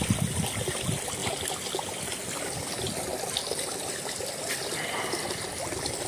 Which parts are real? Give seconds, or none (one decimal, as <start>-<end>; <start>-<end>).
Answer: 0.0-6.1